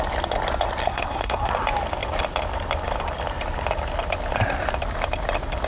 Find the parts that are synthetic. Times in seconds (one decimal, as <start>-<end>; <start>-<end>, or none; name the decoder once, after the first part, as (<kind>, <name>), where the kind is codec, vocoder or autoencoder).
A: 0.8-1.5 (codec, SNAC)

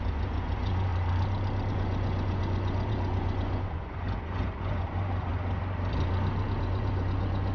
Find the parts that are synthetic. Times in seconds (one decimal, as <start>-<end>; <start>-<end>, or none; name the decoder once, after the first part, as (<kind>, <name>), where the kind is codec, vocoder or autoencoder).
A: 0.0-0.9 (vocoder, Vocos); 1.7-5.3; 6.6-7.5

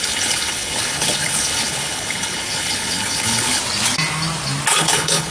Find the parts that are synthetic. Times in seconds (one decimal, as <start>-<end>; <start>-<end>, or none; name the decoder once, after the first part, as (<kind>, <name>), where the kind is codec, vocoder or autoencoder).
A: 0.0-3.6 (codec, HILCodec); 4.7-5.3

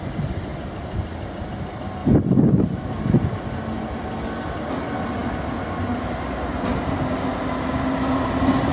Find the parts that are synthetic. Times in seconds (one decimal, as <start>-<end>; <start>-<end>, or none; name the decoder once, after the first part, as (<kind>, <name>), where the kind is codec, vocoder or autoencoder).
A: none

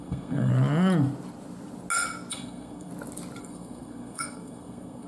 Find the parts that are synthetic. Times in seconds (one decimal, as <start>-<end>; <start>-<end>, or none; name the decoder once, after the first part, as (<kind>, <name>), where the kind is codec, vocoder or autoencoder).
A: 0.0-0.5 (codec, SNAC); 2.3-2.9; 3.4-5.1

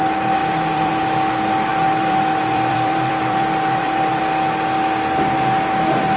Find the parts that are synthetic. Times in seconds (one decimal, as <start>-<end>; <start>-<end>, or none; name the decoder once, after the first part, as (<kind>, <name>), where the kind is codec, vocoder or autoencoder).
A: 0.4-0.9 (vocoder, BigVGAN v2); 1.7-4.2

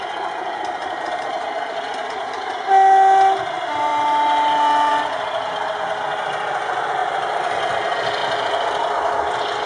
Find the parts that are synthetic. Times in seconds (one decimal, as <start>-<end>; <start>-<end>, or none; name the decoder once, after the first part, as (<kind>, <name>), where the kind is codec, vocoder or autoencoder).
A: 0.8-2.6 (vocoder, BigVGAN v2); 7.0-7.6

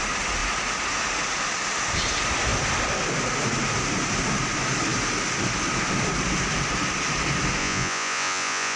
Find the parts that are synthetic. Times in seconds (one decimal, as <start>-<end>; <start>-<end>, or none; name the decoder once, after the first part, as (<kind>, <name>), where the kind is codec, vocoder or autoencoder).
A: 7.6-8.8 (vocoder, Vocos)